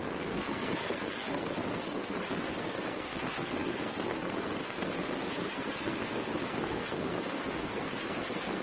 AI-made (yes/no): yes